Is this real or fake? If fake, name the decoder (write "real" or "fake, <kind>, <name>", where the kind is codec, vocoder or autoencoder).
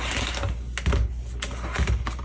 real